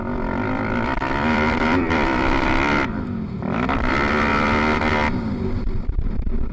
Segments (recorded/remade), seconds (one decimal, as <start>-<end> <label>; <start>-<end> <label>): 0.0-3.9 remade; 3.9-4.3 recorded; 4.3-4.8 remade; 4.8-6.5 recorded